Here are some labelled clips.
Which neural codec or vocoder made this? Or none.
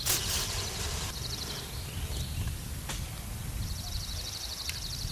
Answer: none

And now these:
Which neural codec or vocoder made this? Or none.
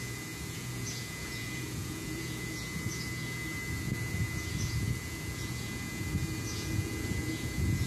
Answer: vocoder, Vocos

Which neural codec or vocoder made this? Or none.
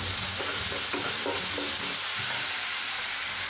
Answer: none